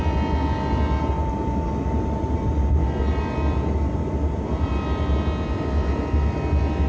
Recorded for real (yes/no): yes